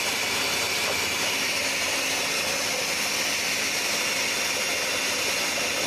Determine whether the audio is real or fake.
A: real